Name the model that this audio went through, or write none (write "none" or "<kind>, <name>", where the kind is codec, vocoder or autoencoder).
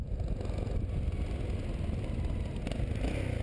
none